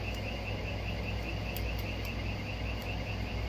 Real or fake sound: real